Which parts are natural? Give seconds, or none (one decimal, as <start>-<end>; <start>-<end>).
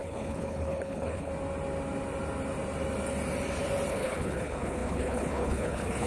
1.3-3.9